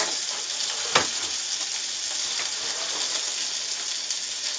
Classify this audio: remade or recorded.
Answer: recorded